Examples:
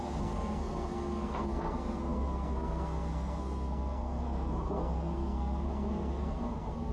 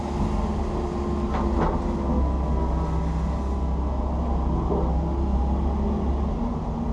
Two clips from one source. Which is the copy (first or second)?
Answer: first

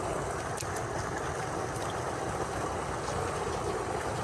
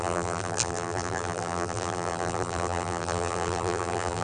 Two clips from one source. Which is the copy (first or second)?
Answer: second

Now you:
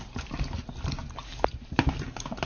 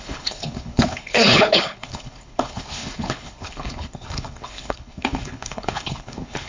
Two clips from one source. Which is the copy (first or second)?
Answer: second